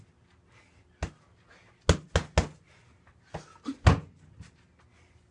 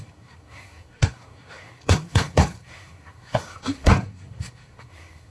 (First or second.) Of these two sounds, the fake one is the second